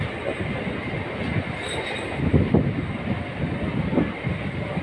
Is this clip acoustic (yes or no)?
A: yes